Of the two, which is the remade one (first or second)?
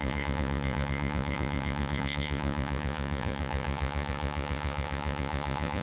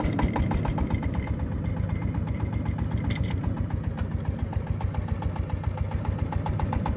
first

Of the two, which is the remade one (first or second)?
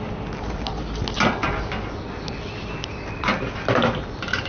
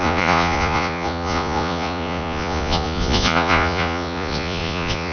second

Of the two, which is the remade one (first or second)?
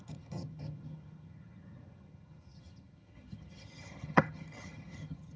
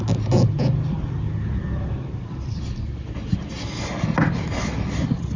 first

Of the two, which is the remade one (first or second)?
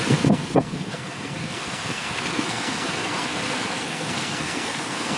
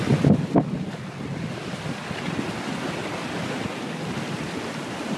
first